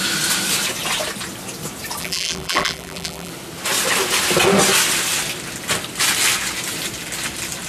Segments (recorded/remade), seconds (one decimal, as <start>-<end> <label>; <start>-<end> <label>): 0.0-2.0 recorded; 2.0-3.3 remade; 3.3-7.7 recorded